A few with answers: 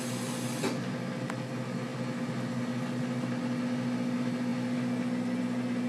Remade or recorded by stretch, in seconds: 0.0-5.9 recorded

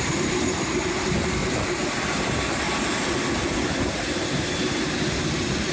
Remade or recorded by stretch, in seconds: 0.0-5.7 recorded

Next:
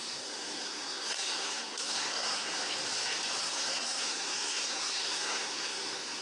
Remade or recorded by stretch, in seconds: 0.0-2.6 remade; 2.6-3.4 recorded; 3.4-6.2 remade

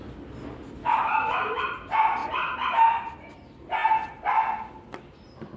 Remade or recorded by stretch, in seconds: 0.0-0.8 recorded; 0.8-1.6 remade; 1.6-5.6 recorded